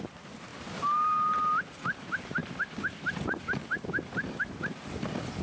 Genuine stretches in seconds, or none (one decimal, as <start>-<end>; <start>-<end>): 0.0-5.4